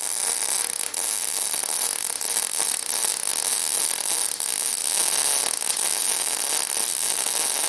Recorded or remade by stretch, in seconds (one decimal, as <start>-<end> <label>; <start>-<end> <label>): 0.0-3.1 remade; 3.1-3.8 recorded; 3.8-4.8 remade; 4.8-6.0 recorded; 6.0-7.7 remade